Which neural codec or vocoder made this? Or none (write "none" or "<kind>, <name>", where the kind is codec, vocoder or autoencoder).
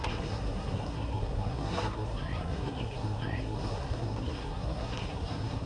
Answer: codec, SNAC